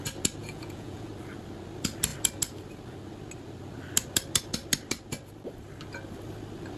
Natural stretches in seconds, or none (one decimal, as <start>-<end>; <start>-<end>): 0.0-0.4; 1.1-6.8